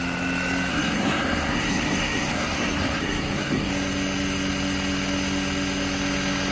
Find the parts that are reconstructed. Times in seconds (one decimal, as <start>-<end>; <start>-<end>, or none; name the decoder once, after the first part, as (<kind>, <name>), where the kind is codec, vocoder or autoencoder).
0.7-3.7 (codec, SNAC)